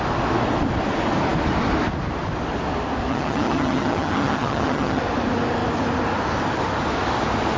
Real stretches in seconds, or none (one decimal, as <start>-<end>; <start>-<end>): 0.0-3.1; 5.0-7.6